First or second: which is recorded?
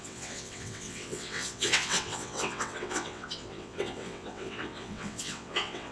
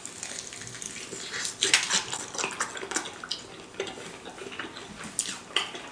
second